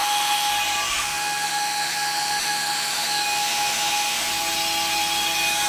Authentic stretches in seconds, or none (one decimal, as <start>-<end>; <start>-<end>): 0.5-0.9; 4.3-5.7